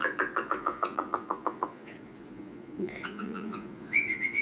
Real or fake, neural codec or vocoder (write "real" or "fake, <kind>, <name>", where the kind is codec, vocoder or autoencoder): fake, vocoder, Vocos